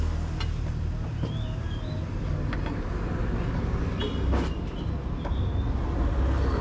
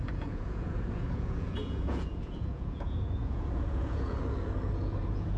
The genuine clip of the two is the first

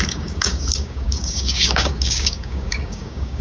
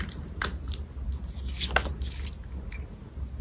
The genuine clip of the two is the second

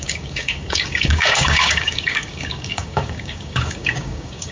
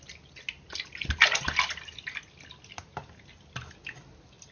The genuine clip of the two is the second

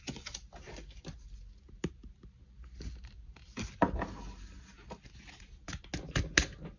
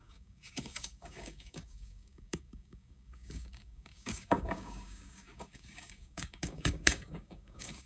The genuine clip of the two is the first